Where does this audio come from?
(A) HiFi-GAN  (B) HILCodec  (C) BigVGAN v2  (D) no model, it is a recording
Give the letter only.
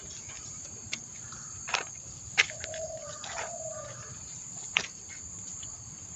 C